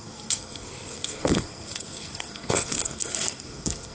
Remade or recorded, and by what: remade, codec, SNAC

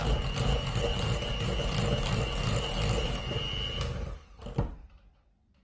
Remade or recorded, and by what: recorded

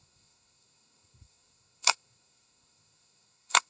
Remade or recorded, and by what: remade, codec, SNAC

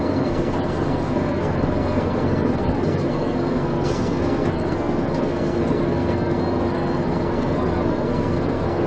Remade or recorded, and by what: remade, codec, SNAC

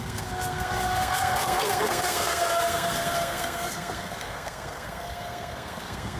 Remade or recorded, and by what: remade, codec, SNAC